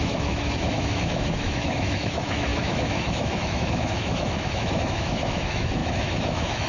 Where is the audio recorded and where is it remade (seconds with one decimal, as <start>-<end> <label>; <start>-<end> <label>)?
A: 0.0-6.7 remade

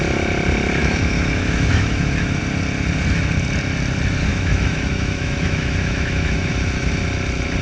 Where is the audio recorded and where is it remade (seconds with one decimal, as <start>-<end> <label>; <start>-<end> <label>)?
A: 0.0-0.8 recorded; 0.8-2.4 remade; 2.4-4.3 recorded; 4.3-6.9 remade; 6.9-7.6 recorded

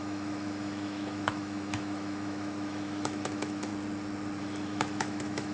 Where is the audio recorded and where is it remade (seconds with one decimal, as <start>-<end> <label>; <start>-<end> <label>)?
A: 0.0-3.7 remade; 3.7-4.4 recorded; 4.4-5.5 remade

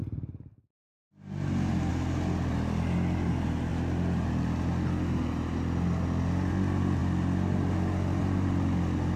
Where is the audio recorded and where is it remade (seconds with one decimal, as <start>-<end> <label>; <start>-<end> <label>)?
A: 0.0-9.2 recorded

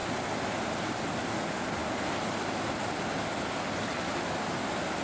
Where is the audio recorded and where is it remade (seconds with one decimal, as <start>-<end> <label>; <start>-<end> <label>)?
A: 0.0-5.0 recorded